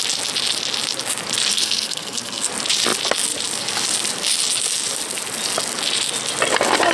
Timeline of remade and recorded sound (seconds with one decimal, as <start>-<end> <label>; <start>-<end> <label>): 0.0-1.5 recorded; 1.5-2.5 remade; 2.5-6.9 recorded